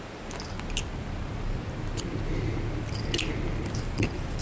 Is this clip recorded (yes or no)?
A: yes